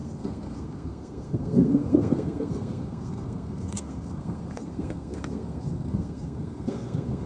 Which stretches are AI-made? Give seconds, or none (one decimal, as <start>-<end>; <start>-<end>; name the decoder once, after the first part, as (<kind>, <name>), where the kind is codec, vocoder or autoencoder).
0.0-7.3 (codec, SNAC)